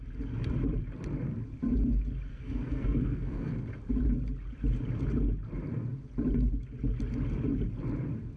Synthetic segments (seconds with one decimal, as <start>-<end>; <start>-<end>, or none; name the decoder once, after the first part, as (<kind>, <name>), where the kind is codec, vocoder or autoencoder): 2.3-3.5 (codec, SNAC)